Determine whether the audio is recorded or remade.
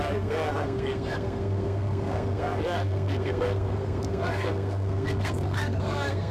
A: remade